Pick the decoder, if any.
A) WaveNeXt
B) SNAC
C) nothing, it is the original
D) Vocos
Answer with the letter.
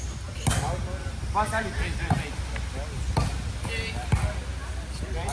C